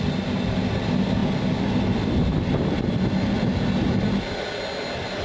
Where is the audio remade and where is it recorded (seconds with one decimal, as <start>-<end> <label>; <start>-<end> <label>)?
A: 0.0-5.2 recorded